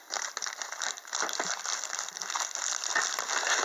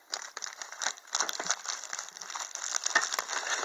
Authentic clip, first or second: second